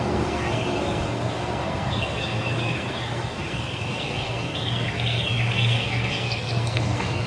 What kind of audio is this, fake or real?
fake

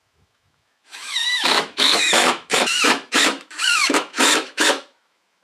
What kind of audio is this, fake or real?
fake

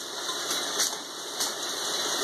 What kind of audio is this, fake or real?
real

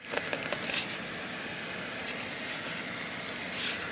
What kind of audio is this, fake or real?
real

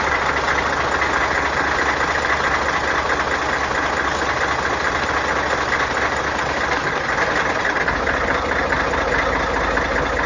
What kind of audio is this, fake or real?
real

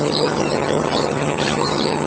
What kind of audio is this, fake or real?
fake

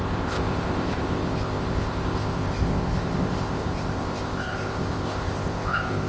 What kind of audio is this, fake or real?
fake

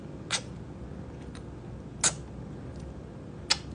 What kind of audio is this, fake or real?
real